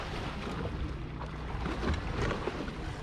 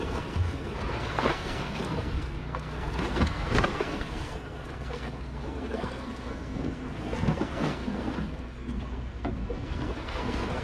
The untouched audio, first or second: first